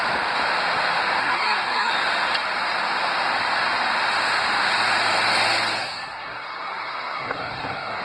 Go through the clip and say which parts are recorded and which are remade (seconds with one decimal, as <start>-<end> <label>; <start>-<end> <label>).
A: 0.0-1.2 recorded; 1.2-1.9 remade; 1.9-5.8 recorded; 5.8-8.0 remade